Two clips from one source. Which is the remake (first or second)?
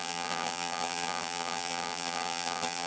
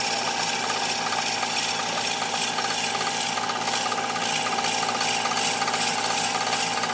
first